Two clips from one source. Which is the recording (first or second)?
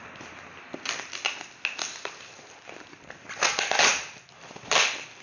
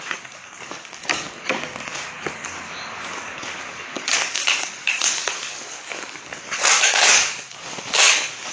first